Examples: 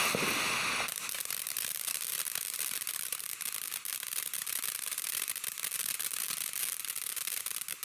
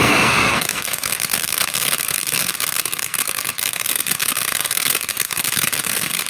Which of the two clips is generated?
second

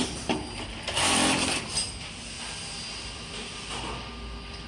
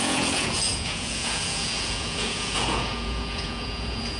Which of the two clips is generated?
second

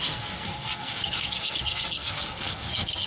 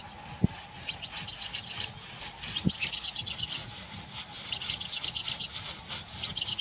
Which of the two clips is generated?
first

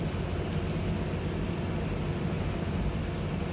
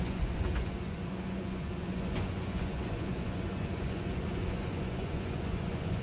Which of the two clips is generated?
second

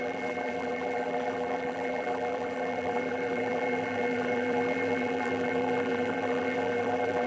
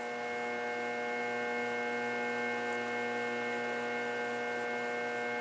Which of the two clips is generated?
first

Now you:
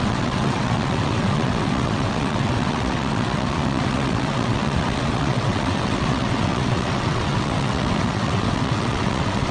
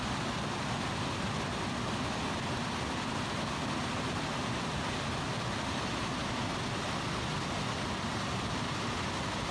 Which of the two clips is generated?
first